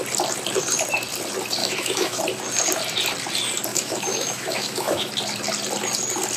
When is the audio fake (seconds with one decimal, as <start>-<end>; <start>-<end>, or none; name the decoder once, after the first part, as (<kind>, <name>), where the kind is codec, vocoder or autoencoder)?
1.6-2.2 (autoencoder, DAC-VAE); 3.7-5.1